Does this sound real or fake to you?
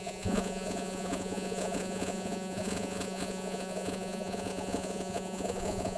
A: fake